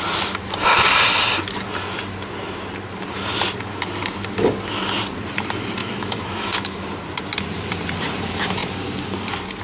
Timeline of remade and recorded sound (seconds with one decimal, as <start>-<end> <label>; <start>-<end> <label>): 0.0-5.8 recorded; 5.8-6.9 remade; 6.9-9.6 recorded